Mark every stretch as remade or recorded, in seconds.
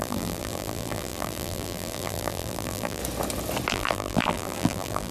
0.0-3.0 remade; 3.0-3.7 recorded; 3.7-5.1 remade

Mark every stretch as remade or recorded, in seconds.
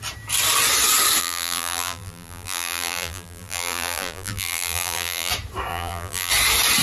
0.0-1.2 recorded; 1.2-5.3 remade; 5.3-5.7 recorded; 5.7-6.3 remade; 6.3-6.8 recorded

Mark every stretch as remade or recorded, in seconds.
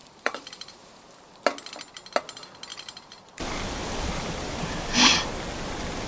0.0-1.2 remade; 1.2-2.7 recorded; 2.7-5.3 remade; 5.3-6.1 recorded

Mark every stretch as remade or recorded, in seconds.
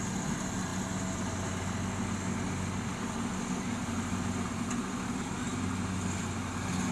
0.0-6.9 recorded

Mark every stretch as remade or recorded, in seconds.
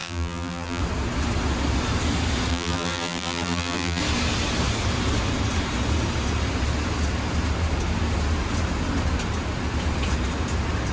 0.0-0.8 remade; 0.8-2.5 recorded; 2.5-4.0 remade; 4.0-10.9 recorded